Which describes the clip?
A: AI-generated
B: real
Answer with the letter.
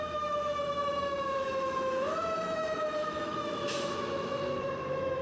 A